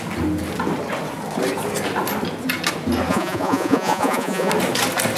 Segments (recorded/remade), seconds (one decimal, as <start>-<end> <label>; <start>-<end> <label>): 0.0-3.1 recorded; 3.1-4.5 remade; 4.5-5.2 recorded